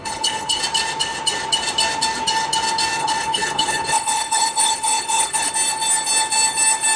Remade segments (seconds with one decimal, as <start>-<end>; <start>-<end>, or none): 0.0-0.6; 3.0-5.5